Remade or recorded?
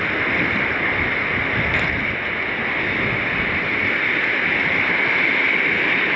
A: recorded